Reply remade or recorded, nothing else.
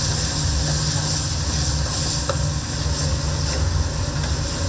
recorded